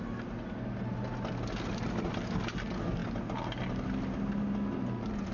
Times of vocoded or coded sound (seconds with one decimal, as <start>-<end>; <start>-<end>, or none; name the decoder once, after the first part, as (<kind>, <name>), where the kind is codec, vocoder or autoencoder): none